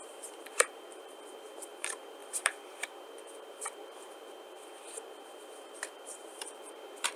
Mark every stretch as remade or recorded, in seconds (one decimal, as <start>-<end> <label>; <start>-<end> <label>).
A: 0.0-7.2 remade

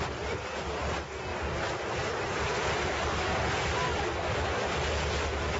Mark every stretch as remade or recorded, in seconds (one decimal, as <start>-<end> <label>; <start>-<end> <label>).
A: 0.0-1.3 recorded; 1.3-4.7 remade; 4.7-5.6 recorded

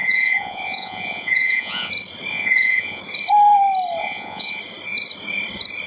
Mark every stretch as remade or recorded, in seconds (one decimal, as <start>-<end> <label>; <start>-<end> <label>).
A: 0.0-1.9 remade; 1.9-2.3 recorded; 2.3-3.0 remade; 3.0-4.0 recorded; 4.0-4.6 remade; 4.6-5.9 recorded

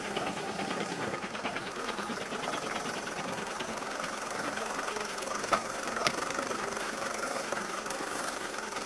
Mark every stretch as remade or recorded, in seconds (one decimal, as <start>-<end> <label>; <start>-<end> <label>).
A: 0.0-2.1 remade; 2.1-3.2 recorded; 3.2-8.9 remade

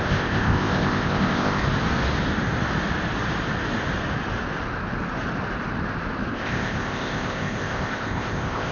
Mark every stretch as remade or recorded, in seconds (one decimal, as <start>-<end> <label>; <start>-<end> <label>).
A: 0.0-1.6 remade; 1.6-6.3 recorded; 6.3-8.7 remade

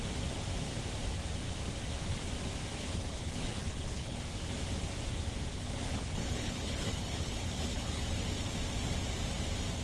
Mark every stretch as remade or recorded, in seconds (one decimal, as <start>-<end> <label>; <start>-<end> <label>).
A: 0.0-2.8 recorded; 2.8-4.2 remade; 4.2-5.5 recorded; 5.5-8.0 remade; 8.0-9.8 recorded

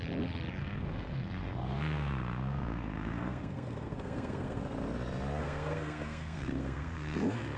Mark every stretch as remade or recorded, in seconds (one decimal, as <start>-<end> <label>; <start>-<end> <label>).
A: 0.0-0.6 recorded; 0.6-4.6 remade; 4.6-5.4 recorded; 5.4-7.6 remade